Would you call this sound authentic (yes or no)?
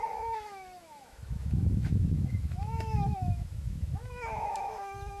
no